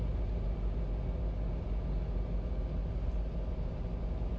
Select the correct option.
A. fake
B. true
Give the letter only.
B